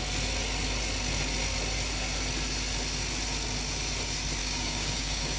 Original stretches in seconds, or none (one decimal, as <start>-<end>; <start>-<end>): 0.0-4.4